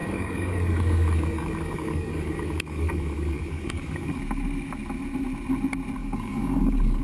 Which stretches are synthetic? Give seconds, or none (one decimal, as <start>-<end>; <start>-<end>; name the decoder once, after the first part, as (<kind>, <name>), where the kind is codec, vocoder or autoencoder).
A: 0.0-4.2 (codec, DAC); 6.0-7.0